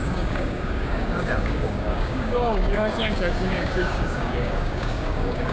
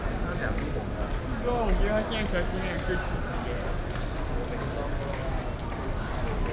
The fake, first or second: first